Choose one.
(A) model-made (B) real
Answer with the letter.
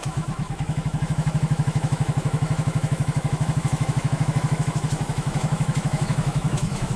A